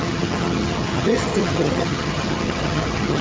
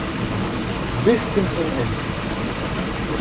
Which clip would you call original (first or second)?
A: second